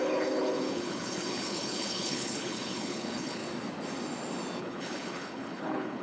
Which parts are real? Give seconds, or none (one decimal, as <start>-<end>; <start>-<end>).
3.4-4.6